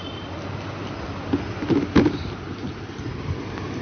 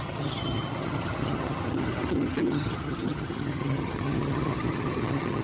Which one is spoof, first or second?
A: second